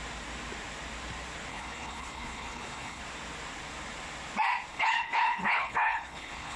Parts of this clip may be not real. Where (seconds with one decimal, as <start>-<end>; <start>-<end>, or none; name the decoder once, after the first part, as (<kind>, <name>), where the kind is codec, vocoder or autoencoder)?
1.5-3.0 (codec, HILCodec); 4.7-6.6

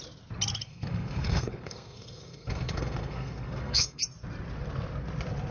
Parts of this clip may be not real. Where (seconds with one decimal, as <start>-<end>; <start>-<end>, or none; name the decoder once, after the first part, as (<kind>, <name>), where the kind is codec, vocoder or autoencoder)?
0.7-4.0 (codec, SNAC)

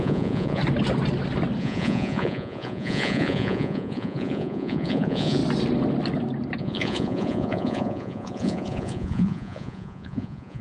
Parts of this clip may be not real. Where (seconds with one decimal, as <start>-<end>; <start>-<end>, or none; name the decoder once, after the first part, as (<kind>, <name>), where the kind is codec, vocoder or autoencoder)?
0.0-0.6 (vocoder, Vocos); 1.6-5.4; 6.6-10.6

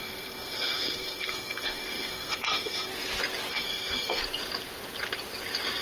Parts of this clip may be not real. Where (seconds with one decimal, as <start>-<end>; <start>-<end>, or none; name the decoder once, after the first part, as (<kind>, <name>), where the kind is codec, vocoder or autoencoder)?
0.0-2.9 (codec, SNAC); 3.5-4.2

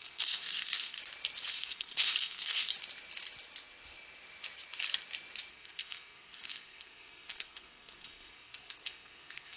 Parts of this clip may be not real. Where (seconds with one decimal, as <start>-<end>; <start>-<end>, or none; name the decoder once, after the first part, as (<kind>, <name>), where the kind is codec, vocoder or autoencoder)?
0.0-1.0 (codec, SNAC); 1.5-2.7; 5.5-9.6